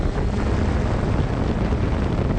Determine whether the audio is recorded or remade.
recorded